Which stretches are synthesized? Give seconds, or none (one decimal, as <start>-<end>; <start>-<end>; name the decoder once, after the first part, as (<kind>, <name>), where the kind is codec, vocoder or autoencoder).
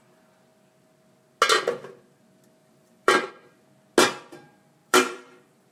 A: 2.6-3.3 (vocoder, BigVGAN v2); 4.8-5.7